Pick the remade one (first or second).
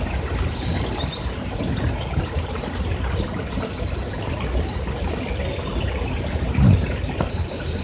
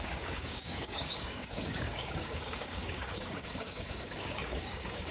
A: second